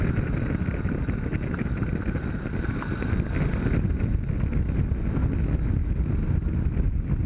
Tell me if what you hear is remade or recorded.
recorded